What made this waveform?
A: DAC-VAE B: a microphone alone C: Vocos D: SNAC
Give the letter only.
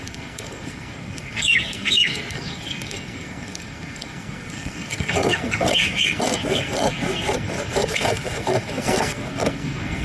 D